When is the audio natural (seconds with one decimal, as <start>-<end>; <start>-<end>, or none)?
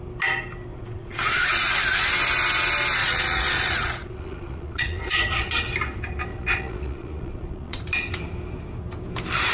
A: 0.0-0.7; 1.6-3.0; 5.5-6.3; 7.8-9.5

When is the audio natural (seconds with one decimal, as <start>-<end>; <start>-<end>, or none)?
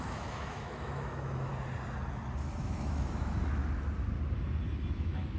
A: 1.5-2.6; 3.6-4.9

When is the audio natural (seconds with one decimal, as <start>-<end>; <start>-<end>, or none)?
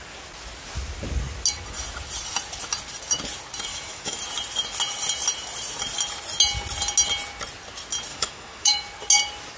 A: 0.0-3.7; 4.2-8.1; 8.8-9.6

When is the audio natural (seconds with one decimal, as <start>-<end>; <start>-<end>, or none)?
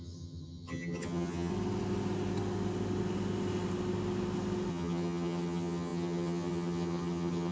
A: 1.5-4.7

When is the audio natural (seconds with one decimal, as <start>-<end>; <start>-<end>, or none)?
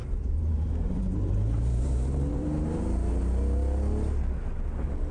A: 3.1-5.1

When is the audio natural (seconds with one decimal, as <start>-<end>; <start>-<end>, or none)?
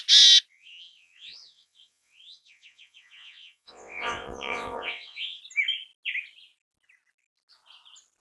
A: 0.0-0.5; 5.4-8.2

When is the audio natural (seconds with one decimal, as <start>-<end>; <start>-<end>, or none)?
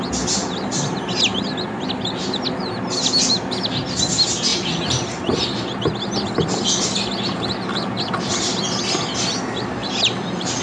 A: 0.0-9.8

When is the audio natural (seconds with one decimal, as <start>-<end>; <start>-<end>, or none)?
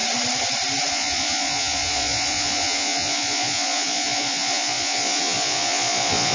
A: 0.0-0.9